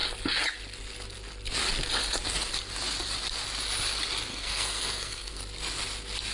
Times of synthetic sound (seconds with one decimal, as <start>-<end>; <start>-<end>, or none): 4.3-5.4